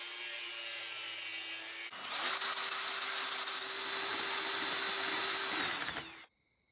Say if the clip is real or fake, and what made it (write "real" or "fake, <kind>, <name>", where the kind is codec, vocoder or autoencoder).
real